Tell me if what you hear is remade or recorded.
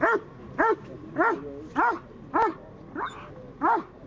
recorded